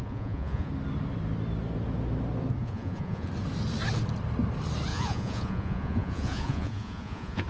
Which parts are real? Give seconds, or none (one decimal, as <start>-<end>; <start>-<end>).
0.7-2.6; 3.3-4.9